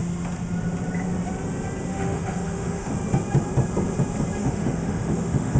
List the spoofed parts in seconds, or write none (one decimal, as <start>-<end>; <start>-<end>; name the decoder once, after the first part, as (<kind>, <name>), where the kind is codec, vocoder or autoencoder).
1.9-2.9 (autoencoder, DAC-VAE); 4.4-5.6